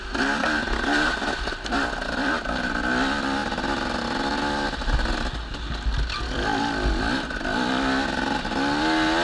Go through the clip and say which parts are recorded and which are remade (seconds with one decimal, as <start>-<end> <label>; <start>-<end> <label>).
0.0-9.2 recorded